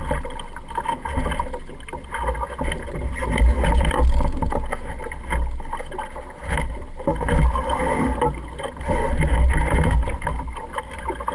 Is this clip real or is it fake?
real